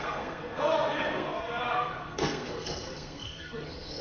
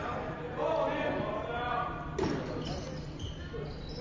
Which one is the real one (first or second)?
second